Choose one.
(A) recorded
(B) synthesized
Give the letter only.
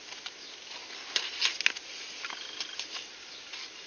A